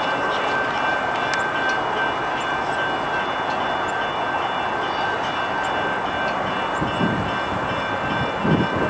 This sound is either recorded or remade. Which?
recorded